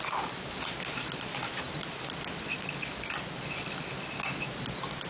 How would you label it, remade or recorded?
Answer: recorded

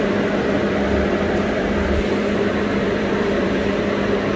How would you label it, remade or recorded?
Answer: remade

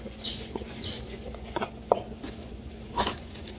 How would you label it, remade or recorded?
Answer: remade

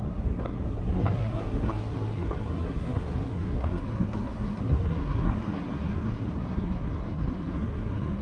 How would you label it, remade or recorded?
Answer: remade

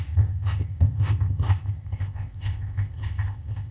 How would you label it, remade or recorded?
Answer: remade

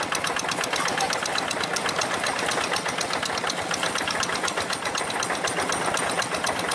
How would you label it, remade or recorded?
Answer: recorded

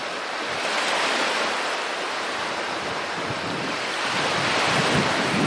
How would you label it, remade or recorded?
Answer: recorded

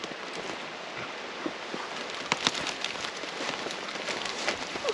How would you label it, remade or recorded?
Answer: remade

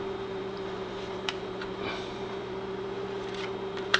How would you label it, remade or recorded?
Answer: remade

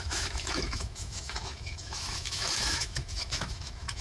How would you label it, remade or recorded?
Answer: remade